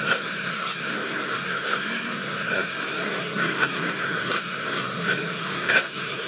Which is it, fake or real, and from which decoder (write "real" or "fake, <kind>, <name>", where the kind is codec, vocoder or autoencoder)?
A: fake, codec, SNAC